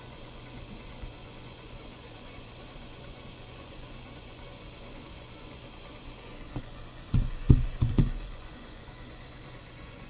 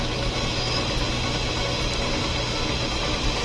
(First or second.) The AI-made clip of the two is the first